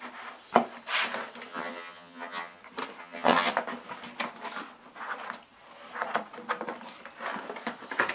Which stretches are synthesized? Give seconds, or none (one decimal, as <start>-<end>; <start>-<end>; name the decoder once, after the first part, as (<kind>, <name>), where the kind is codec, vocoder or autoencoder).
1.5-2.6 (vocoder, HiFi-GAN); 3.0-3.5